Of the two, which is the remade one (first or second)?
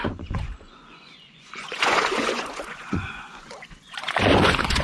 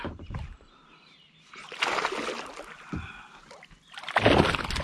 first